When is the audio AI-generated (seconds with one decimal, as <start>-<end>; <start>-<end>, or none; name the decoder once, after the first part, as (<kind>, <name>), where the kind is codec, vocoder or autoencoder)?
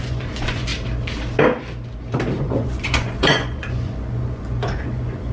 0.0-0.7 (vocoder, Vocos); 2.4-5.3